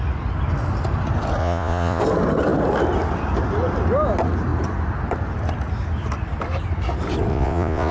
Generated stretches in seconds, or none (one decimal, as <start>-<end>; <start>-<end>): 1.4-2.0; 7.3-7.9